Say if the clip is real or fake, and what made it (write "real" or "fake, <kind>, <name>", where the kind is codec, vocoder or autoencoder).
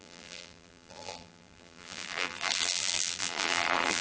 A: fake, vocoder, BigVGAN v2